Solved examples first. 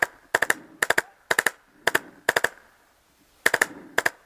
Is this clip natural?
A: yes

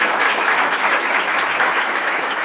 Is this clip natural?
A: no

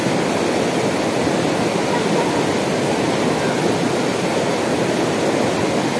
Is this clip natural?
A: yes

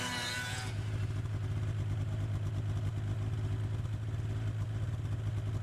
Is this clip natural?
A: yes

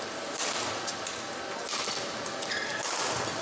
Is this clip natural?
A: yes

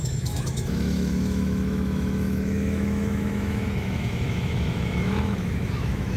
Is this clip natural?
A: no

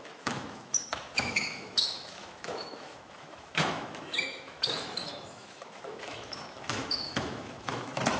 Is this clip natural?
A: no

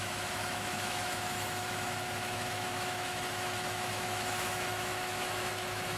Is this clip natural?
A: no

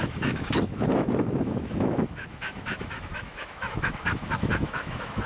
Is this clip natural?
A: no